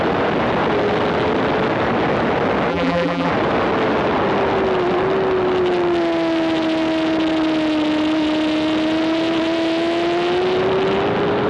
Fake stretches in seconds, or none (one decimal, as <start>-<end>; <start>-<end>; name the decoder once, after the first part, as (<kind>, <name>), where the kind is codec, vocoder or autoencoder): 2.7-3.3 (vocoder, BigVGAN v2)